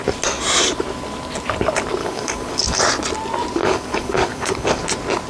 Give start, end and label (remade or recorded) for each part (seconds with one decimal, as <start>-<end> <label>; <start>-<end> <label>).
0.0-2.0 recorded; 2.0-2.8 remade; 2.8-3.6 recorded; 3.6-4.8 remade; 4.8-5.3 recorded